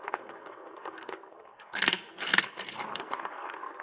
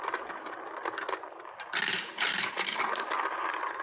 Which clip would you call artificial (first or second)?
first